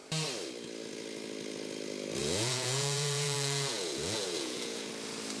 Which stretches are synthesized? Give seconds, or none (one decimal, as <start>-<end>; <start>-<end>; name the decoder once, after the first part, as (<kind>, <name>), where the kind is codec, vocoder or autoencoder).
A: 2.2-4.9 (vocoder, Vocos)